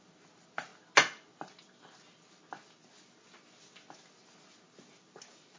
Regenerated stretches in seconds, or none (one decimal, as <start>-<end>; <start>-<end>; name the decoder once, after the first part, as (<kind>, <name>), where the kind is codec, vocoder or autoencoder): none